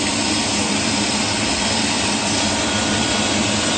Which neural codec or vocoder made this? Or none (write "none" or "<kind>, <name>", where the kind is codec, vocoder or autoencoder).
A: vocoder, BigVGAN v2